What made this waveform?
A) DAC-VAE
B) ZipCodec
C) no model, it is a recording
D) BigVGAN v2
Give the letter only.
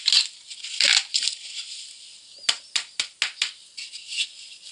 C